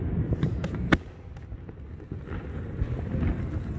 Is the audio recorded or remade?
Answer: recorded